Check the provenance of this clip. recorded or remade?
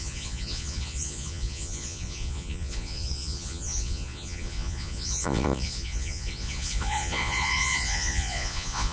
remade